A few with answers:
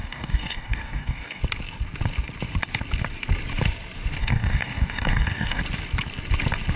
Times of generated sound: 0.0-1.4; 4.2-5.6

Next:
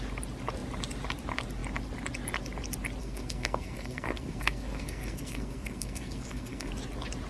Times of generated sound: 3.0-6.7

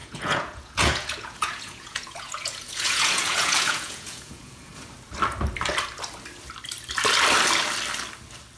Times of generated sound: 0.0-4.7

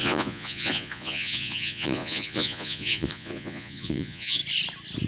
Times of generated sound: 0.0-4.4